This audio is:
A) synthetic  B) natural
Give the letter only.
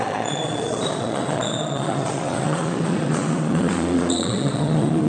A